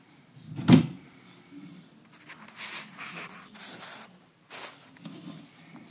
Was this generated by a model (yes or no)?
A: no